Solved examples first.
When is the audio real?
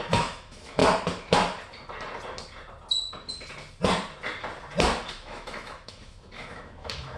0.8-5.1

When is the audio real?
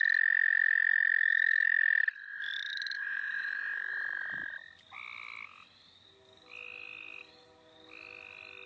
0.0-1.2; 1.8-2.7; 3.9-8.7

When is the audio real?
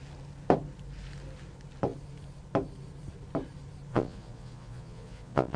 0.0-3.9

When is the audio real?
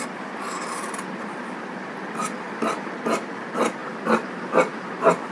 0.0-3.8; 4.4-5.3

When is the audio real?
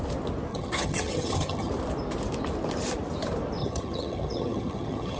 0.0-0.5; 1.7-3.6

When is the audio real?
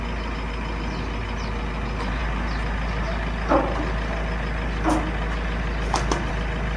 0.0-6.8